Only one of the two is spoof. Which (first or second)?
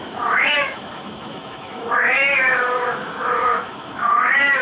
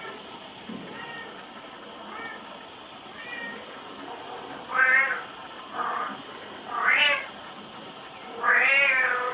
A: first